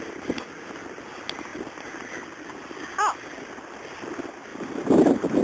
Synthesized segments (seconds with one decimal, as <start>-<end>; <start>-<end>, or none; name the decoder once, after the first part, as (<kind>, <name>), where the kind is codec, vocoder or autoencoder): 4.5-5.4 (vocoder, BigVGAN v2)